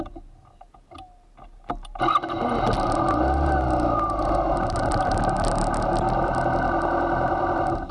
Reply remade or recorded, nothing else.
recorded